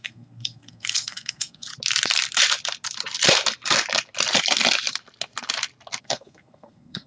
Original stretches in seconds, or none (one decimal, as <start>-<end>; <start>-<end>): 1.7-6.0